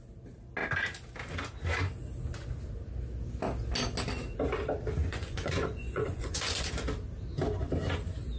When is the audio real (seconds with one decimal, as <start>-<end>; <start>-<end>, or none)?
0.0-5.0; 6.7-8.4